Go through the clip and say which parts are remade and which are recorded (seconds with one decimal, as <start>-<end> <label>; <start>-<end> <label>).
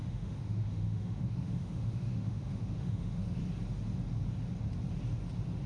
0.0-3.4 remade; 3.4-5.7 recorded